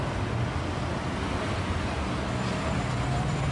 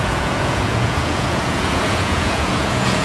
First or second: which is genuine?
first